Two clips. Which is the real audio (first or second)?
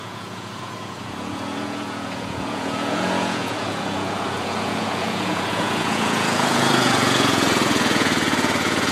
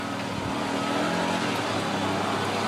second